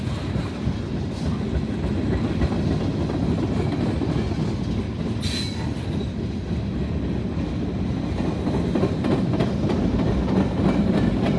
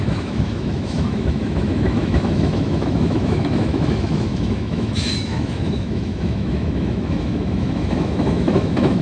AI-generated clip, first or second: second